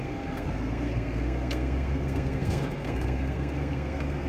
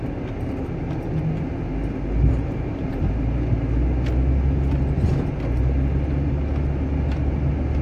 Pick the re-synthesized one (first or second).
first